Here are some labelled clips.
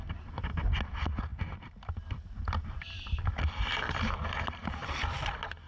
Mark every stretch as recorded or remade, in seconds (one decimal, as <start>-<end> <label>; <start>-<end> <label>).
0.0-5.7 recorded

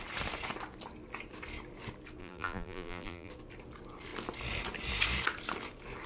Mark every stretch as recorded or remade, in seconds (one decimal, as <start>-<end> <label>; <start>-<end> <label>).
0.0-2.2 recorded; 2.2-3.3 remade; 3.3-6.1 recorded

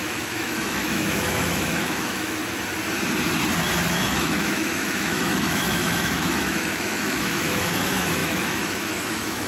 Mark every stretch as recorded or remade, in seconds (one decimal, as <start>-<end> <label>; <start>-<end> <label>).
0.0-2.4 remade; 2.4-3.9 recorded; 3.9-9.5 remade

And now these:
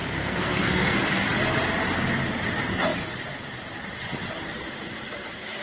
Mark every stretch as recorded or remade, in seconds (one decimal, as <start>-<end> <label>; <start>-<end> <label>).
0.0-1.0 remade; 1.0-5.6 recorded

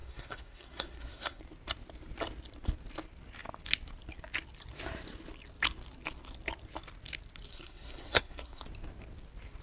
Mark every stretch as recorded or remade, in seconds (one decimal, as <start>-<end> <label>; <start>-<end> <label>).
0.0-1.4 remade; 1.4-7.5 recorded; 7.5-8.6 remade; 8.6-9.6 recorded

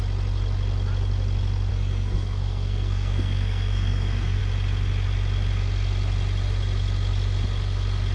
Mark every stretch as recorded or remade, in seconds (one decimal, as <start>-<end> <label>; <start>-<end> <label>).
0.0-1.7 recorded; 1.7-4.4 remade; 4.4-8.1 recorded